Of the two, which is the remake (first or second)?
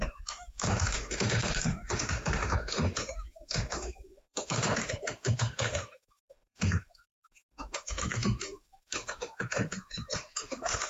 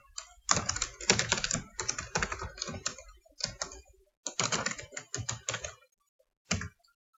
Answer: first